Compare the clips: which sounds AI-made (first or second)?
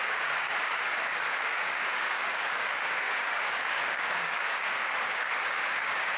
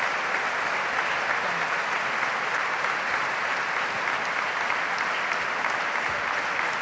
first